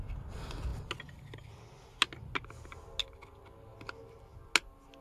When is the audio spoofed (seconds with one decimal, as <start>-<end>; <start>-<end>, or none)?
none